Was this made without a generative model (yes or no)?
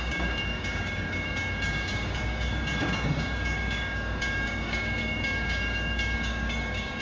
no